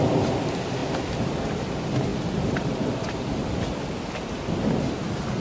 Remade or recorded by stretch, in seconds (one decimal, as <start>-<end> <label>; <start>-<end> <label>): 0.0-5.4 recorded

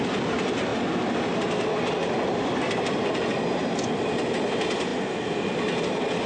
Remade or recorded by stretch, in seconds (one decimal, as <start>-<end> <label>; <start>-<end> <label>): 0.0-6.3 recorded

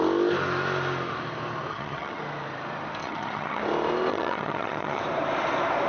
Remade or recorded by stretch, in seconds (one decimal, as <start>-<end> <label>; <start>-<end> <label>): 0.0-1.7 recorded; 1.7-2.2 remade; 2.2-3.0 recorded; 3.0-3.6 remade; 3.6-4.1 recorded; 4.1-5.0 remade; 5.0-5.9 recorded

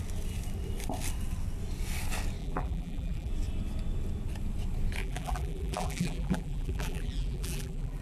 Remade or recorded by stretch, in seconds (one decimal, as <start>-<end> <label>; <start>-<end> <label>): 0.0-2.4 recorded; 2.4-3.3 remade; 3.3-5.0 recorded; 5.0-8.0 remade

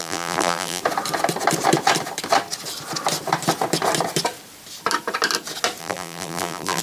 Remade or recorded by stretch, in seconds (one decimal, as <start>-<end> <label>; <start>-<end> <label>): 0.0-0.8 remade; 0.8-5.8 recorded; 5.8-6.8 remade

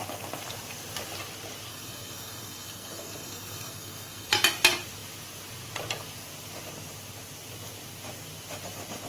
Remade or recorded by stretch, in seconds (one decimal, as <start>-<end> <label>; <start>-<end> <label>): 0.0-1.7 recorded; 1.7-4.3 remade; 4.3-9.1 recorded

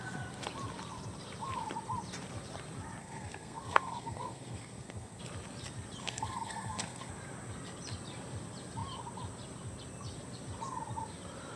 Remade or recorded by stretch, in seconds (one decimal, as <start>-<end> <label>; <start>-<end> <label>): 0.0-3.0 recorded; 3.0-5.2 remade; 5.2-6.0 recorded; 6.0-7.1 remade; 7.1-11.6 recorded

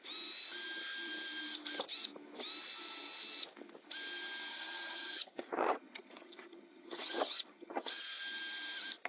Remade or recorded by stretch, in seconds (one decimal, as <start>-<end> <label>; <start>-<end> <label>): 0.0-4.5 recorded; 4.5-8.0 remade; 8.0-9.1 recorded